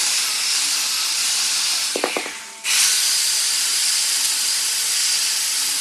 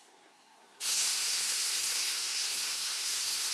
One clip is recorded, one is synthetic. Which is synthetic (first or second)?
second